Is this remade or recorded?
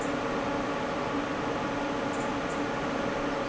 recorded